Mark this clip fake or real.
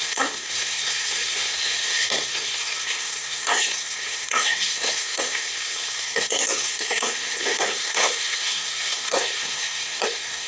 fake